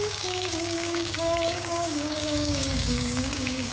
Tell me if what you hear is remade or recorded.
remade